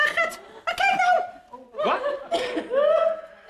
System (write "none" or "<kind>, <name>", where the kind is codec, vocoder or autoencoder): none